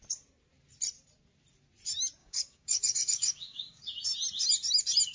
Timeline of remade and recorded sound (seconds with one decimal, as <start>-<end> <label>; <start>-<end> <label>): 0.0-2.2 recorded; 2.2-3.8 remade; 3.8-5.1 recorded